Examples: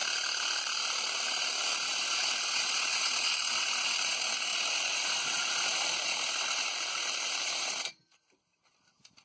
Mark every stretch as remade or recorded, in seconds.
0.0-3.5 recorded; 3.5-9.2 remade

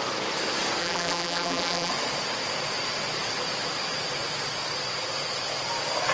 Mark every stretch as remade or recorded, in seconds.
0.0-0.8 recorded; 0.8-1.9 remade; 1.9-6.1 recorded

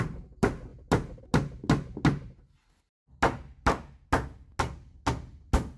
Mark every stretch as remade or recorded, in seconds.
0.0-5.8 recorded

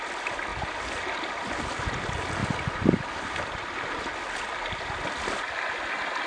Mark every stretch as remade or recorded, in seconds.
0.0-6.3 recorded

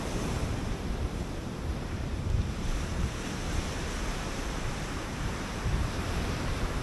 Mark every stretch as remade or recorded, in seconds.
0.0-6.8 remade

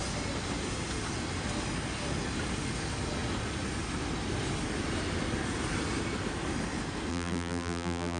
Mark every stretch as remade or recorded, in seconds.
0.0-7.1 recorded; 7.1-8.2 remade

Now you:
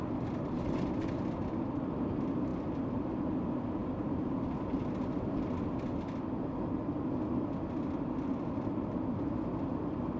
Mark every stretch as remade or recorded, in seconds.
0.0-10.2 recorded

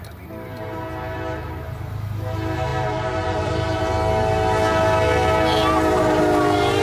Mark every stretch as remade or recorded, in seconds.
0.0-2.7 recorded; 2.7-3.8 remade; 3.8-6.8 recorded